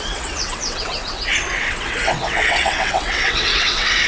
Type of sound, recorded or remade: remade